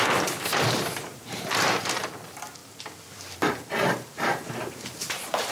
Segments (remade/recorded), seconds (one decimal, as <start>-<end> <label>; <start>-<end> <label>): 0.0-5.5 remade